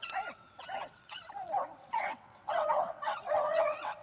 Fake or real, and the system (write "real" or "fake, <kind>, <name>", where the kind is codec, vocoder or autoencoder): fake, vocoder, WaveNeXt